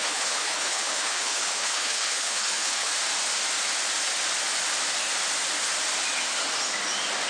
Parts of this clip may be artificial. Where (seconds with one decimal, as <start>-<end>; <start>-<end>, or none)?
0.0-2.9